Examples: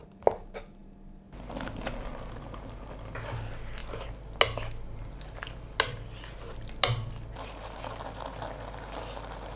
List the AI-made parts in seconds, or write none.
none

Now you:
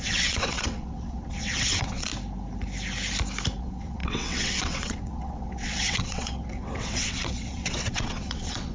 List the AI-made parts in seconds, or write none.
0.0-2.1; 3.6-8.7